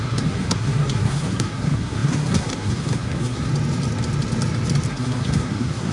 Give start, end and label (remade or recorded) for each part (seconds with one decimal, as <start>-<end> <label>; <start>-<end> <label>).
0.0-3.5 remade; 3.5-4.9 recorded; 4.9-5.9 remade